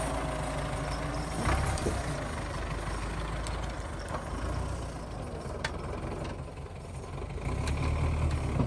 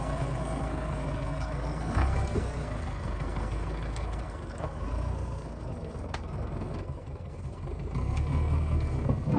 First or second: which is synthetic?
second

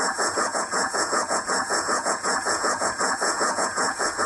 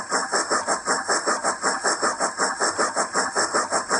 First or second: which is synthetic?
first